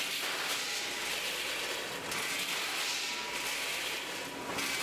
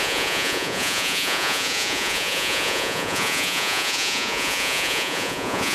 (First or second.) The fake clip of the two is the second